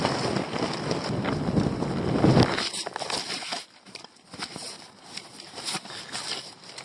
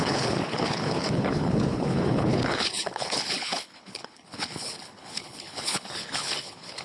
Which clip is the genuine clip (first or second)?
first